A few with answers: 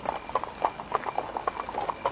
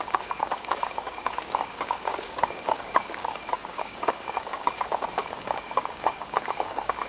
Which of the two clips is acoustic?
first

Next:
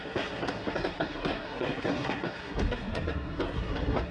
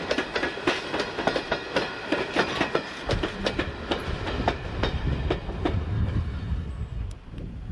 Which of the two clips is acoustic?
second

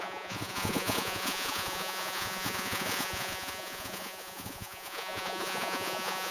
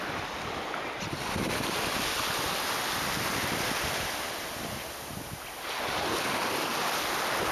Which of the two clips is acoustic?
second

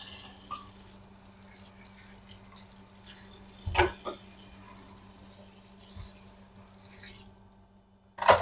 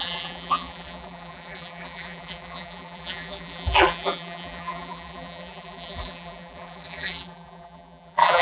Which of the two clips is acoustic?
first